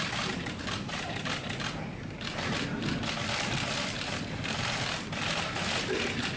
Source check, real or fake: real